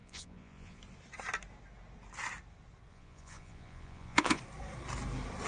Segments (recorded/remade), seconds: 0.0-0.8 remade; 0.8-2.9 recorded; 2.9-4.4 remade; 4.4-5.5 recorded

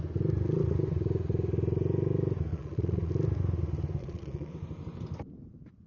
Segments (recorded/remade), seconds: 0.0-2.5 recorded; 2.5-3.1 remade; 3.1-4.0 recorded; 4.0-4.5 remade; 4.5-5.9 recorded